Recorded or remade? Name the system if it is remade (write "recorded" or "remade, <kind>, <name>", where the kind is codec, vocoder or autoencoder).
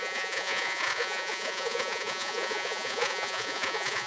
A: remade, vocoder, Vocos